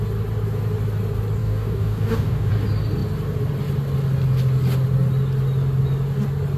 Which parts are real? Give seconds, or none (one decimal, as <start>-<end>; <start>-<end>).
0.0-1.4; 2.5-6.6